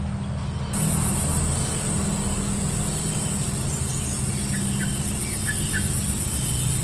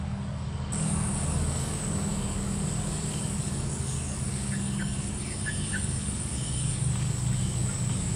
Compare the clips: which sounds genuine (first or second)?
first